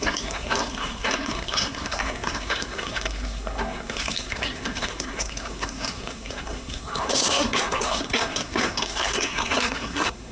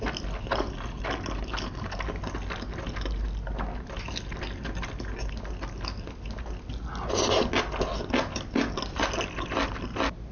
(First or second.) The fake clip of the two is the first